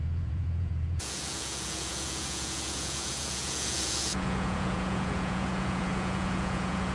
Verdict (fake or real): fake